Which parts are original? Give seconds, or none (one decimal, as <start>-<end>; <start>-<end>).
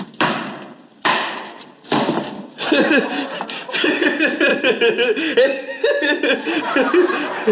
0.0-7.5